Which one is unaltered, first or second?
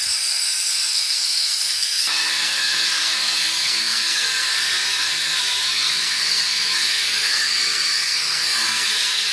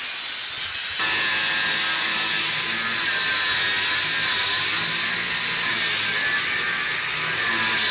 second